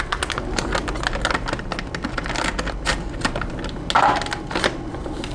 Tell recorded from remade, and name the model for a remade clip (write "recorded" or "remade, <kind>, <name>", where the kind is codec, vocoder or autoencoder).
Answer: recorded